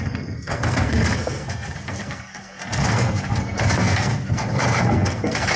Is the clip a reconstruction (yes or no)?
yes